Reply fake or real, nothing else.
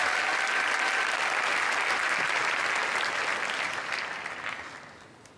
real